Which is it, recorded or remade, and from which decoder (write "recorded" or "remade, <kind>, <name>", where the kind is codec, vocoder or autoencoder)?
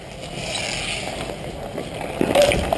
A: recorded